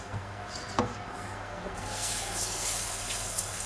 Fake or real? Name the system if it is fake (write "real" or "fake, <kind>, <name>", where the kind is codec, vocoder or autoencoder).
fake, codec, SNAC